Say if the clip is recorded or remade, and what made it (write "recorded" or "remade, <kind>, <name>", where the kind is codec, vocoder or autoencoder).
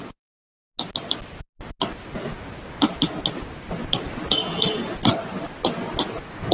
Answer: recorded